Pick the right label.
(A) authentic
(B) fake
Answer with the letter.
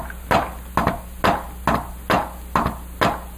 A